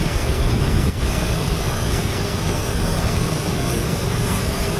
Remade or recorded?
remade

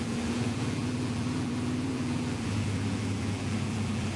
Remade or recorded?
remade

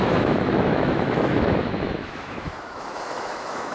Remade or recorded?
remade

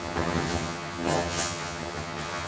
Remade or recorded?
remade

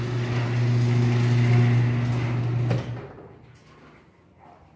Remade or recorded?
recorded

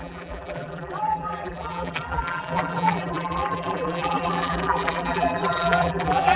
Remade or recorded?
remade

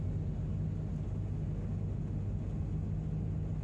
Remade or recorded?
recorded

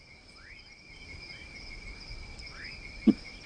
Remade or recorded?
remade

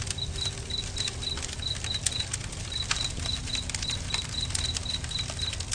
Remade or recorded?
recorded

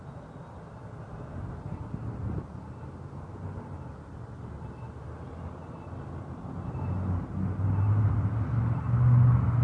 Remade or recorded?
recorded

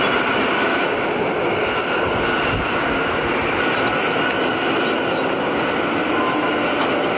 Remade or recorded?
recorded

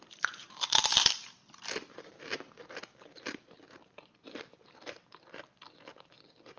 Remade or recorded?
remade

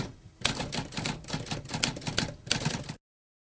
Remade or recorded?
recorded